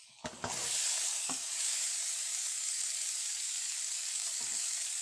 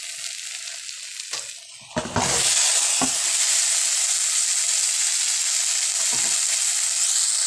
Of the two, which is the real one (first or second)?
second